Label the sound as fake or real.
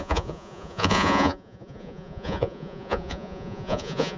fake